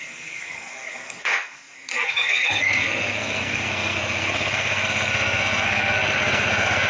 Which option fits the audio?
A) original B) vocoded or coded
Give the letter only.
B